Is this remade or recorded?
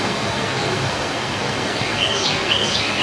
remade